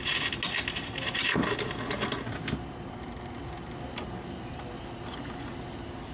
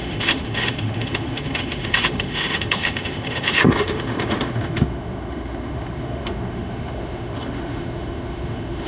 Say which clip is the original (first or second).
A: first